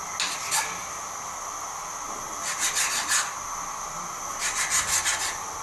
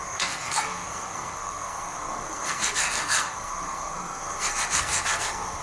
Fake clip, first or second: second